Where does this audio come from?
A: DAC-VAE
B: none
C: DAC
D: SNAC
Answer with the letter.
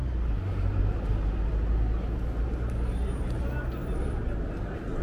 B